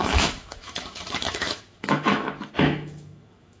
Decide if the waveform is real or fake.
fake